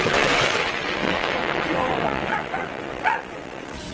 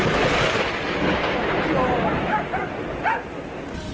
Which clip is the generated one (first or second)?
first